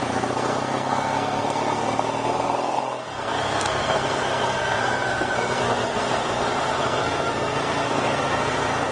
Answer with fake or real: fake